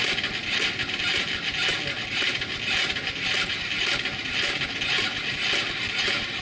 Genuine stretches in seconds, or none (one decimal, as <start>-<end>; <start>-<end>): 0.0-6.4